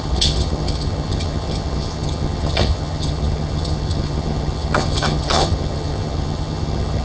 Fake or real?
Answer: fake